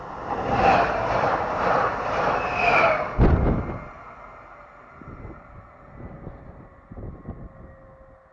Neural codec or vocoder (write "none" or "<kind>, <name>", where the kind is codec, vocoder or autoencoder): none